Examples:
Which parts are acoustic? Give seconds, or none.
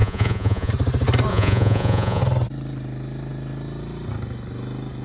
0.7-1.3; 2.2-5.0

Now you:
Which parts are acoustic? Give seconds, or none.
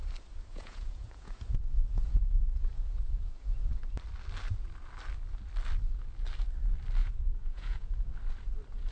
0.0-0.5; 3.7-7.0; 8.1-8.9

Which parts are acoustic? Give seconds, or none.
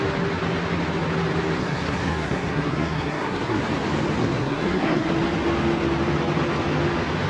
0.0-1.6; 3.6-4.2; 5.1-7.3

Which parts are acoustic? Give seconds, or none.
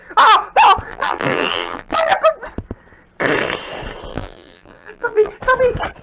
0.0-0.9; 2.1-4.1; 5.3-6.0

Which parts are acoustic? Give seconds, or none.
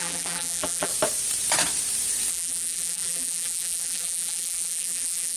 0.9-2.3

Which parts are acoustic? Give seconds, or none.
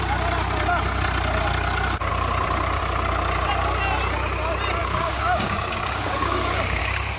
0.0-4.8; 6.8-7.2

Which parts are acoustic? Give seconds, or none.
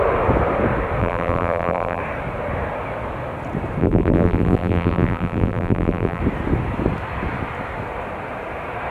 0.0-1.0; 2.0-3.8; 6.2-8.9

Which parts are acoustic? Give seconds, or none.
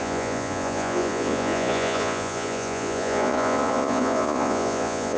none